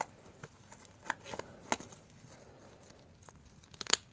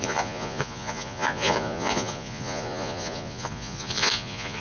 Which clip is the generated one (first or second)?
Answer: second